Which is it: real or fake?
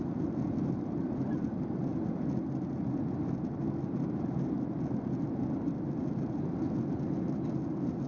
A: real